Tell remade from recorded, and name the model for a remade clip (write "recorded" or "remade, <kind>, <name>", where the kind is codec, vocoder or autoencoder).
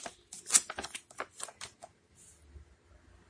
recorded